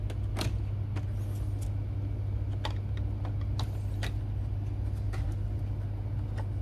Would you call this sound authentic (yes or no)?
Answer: yes